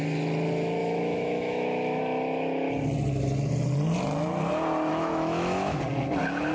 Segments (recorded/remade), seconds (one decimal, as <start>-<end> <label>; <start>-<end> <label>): 0.0-0.8 recorded; 0.8-2.0 remade; 2.0-4.9 recorded; 4.9-5.8 remade; 5.8-6.5 recorded